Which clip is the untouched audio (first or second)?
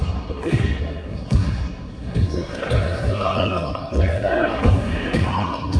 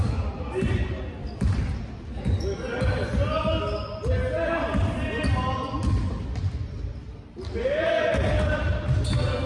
second